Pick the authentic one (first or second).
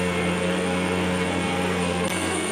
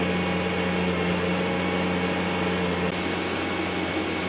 second